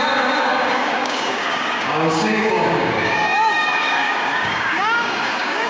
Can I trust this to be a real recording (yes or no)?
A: no